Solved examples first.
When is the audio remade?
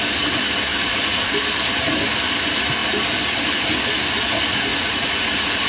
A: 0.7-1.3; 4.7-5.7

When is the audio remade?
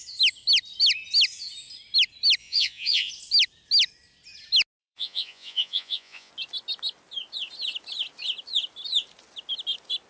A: 2.4-3.1; 4.8-6.3